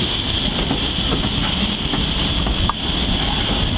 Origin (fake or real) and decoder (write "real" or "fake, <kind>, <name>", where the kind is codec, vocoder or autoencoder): real